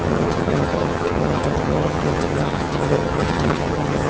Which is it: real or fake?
fake